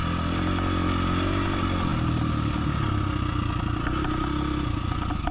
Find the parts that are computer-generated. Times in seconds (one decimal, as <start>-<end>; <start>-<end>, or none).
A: none